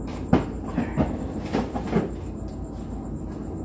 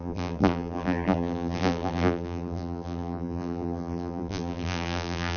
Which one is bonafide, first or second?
first